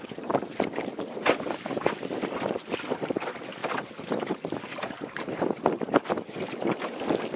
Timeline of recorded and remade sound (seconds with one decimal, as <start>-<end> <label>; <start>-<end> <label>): 0.0-3.6 recorded; 3.6-5.8 remade; 5.8-7.4 recorded